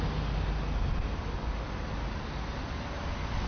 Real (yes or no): yes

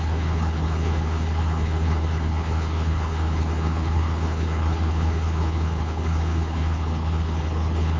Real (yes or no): no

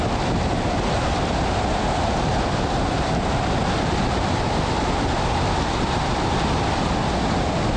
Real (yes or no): yes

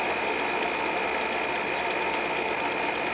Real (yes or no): yes